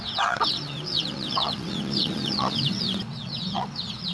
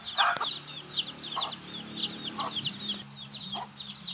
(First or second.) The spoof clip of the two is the first